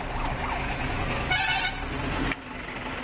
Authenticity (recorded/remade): recorded